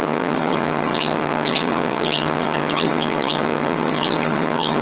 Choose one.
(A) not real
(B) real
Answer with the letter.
A